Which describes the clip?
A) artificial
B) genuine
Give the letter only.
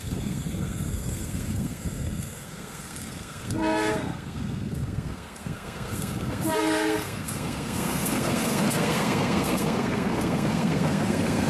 A